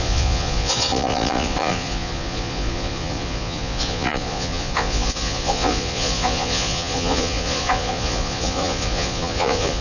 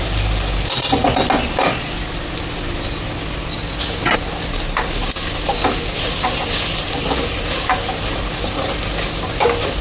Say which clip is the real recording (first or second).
second